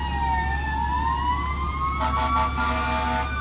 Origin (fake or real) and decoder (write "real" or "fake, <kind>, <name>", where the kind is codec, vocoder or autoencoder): real